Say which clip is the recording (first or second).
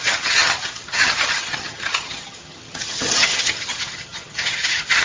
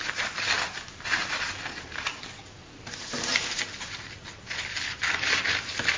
second